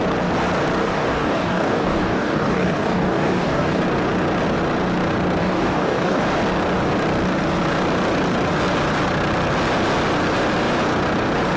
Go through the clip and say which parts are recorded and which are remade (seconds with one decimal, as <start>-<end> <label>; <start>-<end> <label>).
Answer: 0.0-0.8 recorded; 0.8-3.8 remade; 3.8-5.4 recorded; 5.4-6.2 remade; 6.2-11.6 recorded